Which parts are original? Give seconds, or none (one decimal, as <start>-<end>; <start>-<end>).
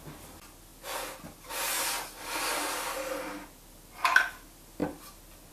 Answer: 0.0-5.5